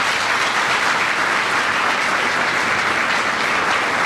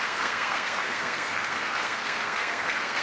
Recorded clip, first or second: first